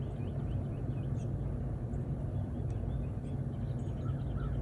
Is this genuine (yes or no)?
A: yes